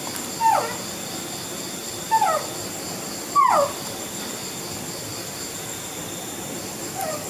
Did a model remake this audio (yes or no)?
no